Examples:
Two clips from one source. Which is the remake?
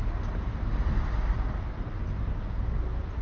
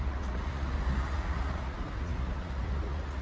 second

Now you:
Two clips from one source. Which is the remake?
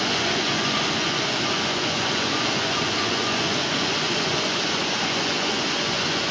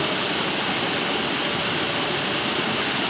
first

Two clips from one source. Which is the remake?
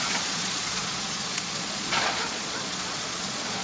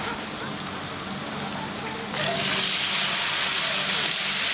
first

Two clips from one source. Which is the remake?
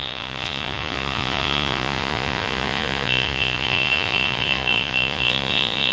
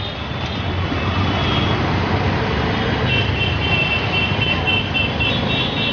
first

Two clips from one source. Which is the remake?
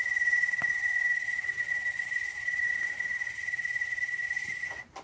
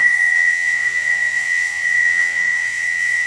second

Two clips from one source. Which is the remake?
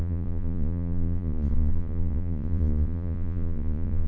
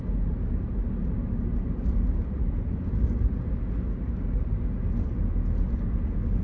first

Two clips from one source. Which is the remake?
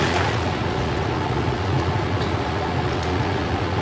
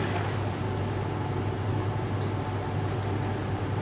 first